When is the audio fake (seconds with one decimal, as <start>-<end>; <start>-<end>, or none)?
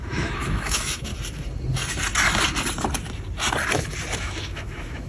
0.0-1.1; 4.2-5.1